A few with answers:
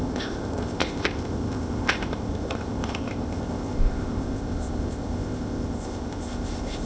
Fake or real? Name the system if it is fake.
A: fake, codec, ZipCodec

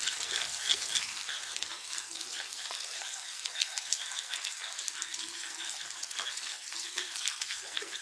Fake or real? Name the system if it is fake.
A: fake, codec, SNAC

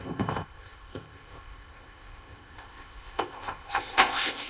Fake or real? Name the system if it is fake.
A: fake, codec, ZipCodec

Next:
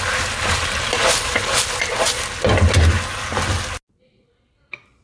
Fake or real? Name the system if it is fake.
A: real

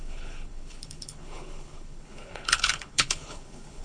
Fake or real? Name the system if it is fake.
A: fake, codec, HILCodec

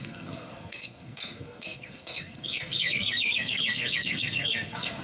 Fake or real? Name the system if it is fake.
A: fake, codec, SNAC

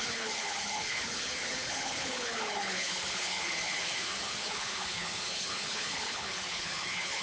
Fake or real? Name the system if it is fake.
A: fake, codec, HILCodec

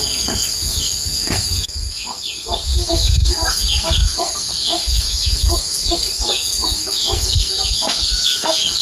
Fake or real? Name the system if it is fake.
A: fake, codec, SNAC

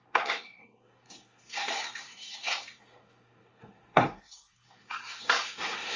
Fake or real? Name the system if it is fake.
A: fake, codec, SNAC